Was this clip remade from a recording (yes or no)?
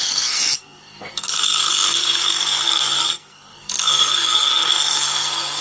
yes